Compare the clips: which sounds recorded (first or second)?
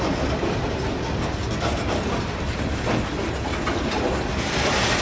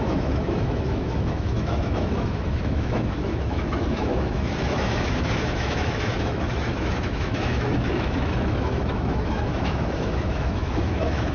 first